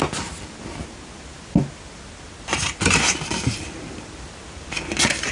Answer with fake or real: real